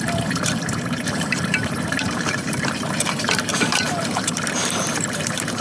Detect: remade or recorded remade